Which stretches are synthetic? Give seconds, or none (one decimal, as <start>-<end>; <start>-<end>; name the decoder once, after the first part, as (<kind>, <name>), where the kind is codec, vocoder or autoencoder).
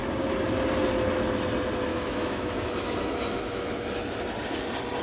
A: 1.9-4.2 (autoencoder, DAC-VAE)